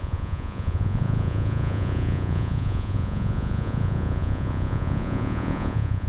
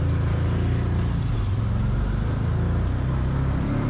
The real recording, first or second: second